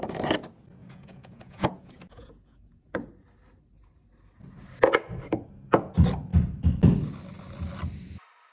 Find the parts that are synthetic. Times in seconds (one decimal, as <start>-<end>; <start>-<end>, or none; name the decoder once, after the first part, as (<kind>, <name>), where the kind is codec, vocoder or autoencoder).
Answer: 0.8-3.1 (vocoder, Vocos)